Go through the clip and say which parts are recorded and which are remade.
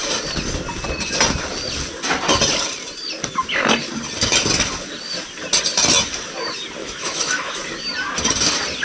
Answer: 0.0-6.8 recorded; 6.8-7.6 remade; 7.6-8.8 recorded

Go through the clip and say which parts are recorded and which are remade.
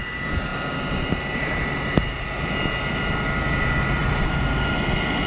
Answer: 0.0-4.0 recorded; 4.0-4.7 remade; 4.7-5.3 recorded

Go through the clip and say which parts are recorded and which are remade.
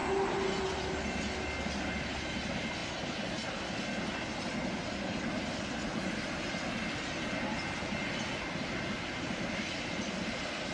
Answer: 0.0-10.7 recorded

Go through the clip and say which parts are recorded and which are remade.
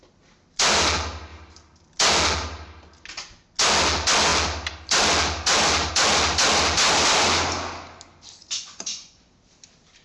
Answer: 0.0-8.4 recorded; 8.4-9.3 remade; 9.3-10.0 recorded